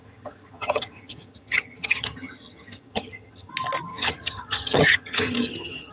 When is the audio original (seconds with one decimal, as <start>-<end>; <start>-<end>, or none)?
3.5-3.9